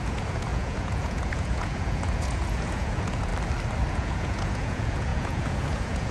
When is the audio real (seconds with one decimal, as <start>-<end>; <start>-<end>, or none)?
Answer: 3.3-3.9